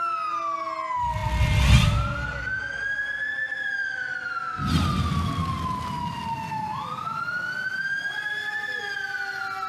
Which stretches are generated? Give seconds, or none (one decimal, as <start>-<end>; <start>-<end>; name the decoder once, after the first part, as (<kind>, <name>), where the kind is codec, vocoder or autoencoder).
none